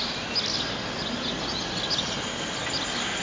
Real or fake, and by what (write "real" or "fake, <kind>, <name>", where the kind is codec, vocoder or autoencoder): real